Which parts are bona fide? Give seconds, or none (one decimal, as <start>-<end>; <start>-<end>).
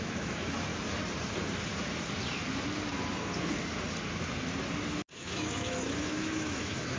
0.7-4.9